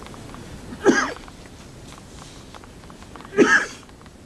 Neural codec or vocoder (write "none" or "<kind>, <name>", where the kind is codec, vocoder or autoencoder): none